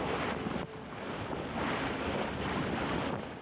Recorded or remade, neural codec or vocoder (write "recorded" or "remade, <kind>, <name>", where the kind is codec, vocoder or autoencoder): recorded